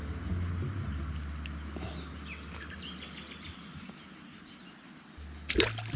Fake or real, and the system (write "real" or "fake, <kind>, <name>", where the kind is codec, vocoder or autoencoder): real